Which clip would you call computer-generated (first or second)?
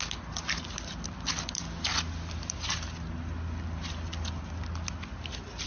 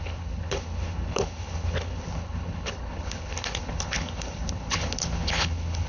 second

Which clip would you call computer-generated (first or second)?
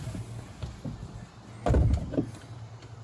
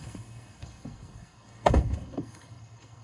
second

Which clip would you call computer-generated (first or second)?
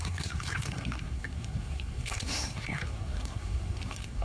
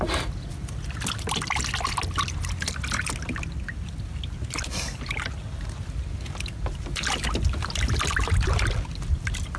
first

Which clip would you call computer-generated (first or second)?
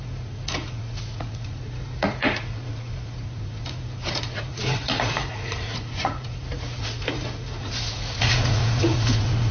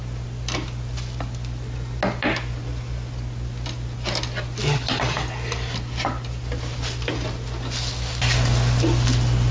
first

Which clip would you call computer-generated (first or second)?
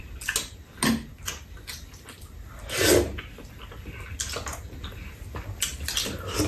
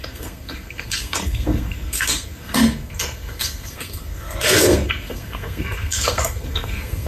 second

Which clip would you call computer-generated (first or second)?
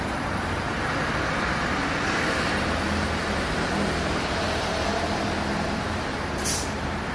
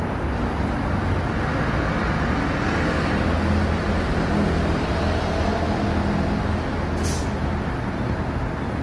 first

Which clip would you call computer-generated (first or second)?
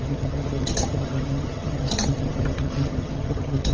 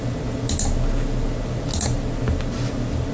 first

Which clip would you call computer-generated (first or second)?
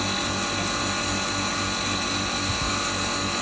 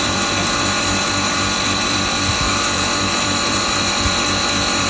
second